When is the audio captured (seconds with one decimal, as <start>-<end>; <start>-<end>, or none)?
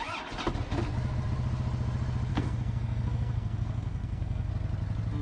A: 0.0-2.3; 4.5-5.2